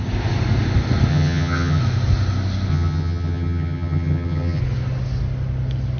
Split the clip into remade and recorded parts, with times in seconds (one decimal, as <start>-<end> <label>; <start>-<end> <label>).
0.0-1.1 recorded; 1.1-1.8 remade; 1.8-2.7 recorded; 2.7-4.6 remade; 4.6-6.0 recorded